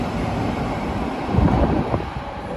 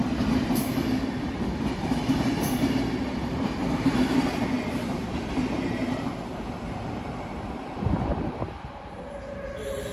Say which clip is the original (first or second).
first